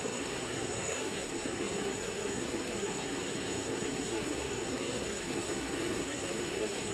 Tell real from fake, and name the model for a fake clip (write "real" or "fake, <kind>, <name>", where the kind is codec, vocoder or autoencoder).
fake, codec, SNAC